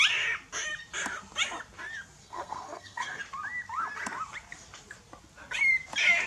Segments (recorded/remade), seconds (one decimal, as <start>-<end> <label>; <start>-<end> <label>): 0.0-2.2 recorded; 2.2-3.2 remade; 3.2-6.3 recorded